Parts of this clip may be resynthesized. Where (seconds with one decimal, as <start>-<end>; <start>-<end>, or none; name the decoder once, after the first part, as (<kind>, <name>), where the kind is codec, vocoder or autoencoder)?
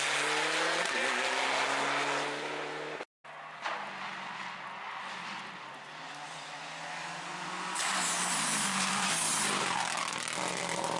none